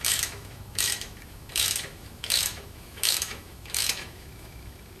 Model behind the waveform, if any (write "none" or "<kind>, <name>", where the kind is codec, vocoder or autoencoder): autoencoder, DAC-VAE